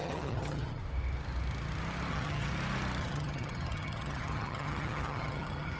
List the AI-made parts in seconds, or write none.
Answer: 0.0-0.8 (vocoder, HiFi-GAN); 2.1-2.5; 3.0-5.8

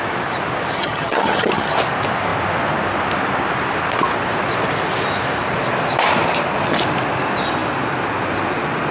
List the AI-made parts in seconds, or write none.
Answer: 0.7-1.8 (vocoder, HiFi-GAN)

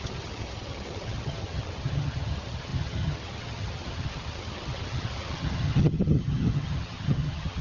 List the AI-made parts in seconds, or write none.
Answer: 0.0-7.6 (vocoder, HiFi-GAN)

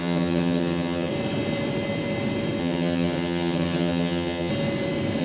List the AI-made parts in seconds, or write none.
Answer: 0.0-1.1 (vocoder, HiFi-GAN); 2.6-4.5